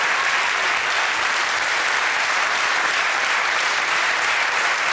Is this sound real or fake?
real